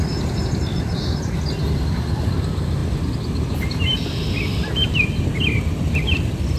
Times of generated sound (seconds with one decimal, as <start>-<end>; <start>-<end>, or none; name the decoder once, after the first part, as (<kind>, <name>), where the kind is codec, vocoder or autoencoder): none